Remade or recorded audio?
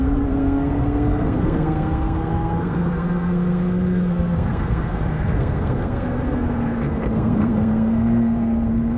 remade